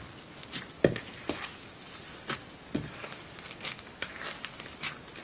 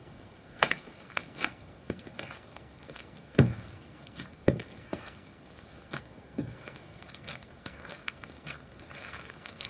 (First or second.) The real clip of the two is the first